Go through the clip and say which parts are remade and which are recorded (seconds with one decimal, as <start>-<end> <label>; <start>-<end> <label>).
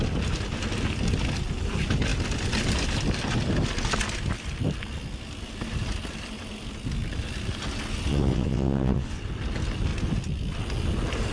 0.0-8.1 recorded; 8.1-9.2 remade; 9.2-11.3 recorded